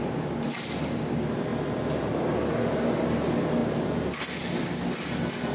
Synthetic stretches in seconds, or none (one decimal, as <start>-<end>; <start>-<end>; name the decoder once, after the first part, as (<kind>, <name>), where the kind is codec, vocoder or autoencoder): 1.5-2.1 (vocoder, BigVGAN v2); 3.6-4.1